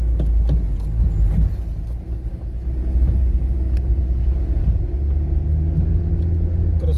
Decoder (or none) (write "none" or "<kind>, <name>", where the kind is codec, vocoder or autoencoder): none